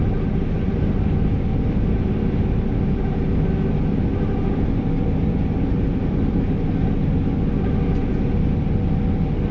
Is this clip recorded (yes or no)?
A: yes